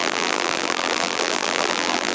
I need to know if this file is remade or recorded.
remade